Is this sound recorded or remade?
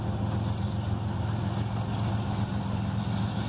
recorded